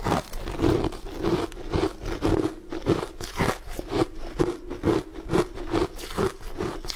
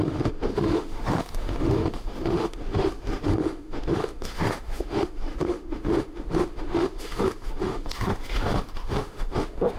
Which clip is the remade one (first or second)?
second